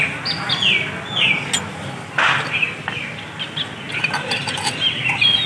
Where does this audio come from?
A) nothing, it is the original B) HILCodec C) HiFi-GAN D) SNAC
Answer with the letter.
A